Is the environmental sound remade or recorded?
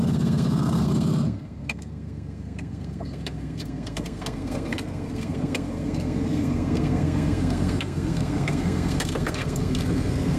remade